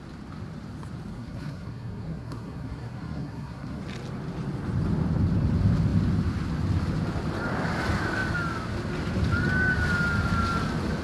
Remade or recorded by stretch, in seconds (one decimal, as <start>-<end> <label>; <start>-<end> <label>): 0.0-1.1 recorded; 1.1-3.8 remade; 3.8-11.0 recorded